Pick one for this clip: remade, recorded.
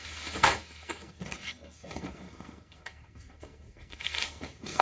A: remade